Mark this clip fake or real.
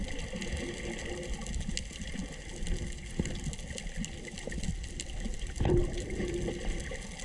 real